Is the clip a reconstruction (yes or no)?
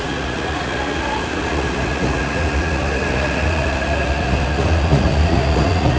yes